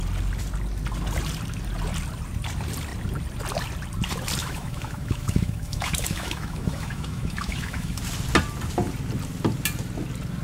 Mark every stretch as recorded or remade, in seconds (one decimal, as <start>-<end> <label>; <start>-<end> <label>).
0.0-4.4 recorded; 4.4-8.0 remade; 8.0-10.4 recorded